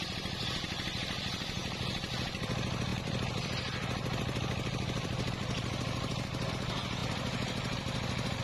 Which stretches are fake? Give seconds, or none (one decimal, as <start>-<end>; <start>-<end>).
0.0-1.6; 2.4-8.4